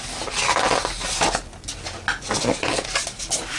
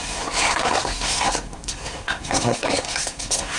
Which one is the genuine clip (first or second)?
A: first